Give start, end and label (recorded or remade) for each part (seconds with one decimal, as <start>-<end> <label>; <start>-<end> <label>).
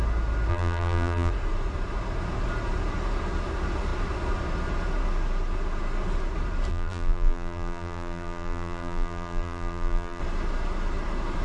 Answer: 0.0-0.5 recorded; 0.5-1.3 remade; 1.3-6.7 recorded; 6.7-10.2 remade; 10.2-11.4 recorded